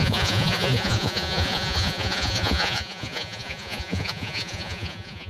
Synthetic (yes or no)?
yes